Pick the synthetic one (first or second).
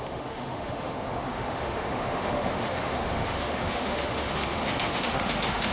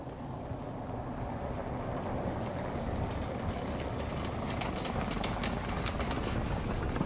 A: first